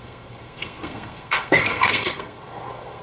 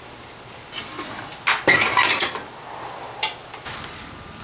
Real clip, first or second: second